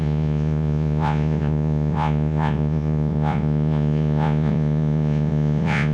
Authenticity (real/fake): fake